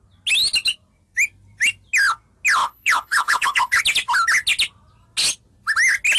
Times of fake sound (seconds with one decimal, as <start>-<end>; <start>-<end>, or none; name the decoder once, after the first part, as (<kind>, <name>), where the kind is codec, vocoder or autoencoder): 2.6-3.8 (codec, HILCodec)